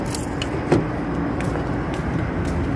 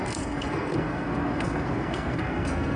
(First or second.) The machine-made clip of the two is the second